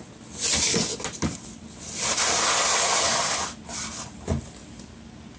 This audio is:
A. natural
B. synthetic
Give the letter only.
A